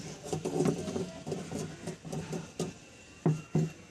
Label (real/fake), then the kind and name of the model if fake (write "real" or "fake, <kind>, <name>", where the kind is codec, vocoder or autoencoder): real